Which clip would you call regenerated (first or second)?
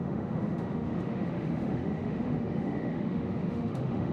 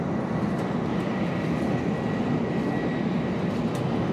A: first